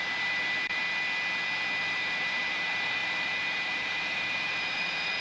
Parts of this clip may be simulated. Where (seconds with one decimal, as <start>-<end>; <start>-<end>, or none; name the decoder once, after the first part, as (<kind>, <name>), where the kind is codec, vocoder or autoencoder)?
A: 0.0-0.8 (vocoder, BigVGAN v2); 1.8-5.2